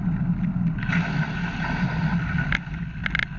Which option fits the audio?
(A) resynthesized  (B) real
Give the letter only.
B